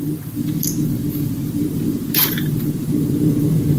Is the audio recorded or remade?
remade